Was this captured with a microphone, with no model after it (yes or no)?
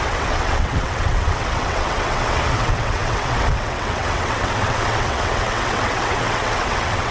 no